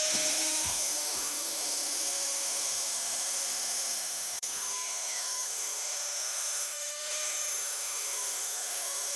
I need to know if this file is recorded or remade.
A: remade